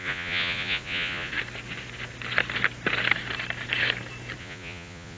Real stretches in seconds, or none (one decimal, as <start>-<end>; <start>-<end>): 1.3-4.4